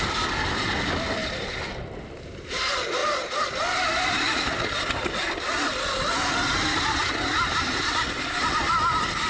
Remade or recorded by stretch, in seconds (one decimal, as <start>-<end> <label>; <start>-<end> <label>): 0.0-9.3 recorded